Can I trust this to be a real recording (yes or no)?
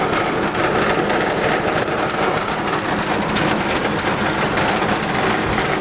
yes